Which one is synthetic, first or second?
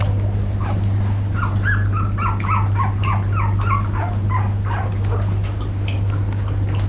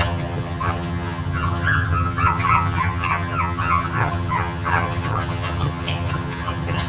second